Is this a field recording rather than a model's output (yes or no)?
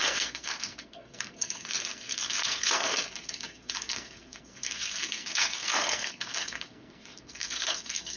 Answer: no